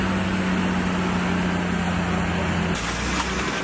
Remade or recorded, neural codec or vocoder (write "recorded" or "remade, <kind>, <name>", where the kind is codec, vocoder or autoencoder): recorded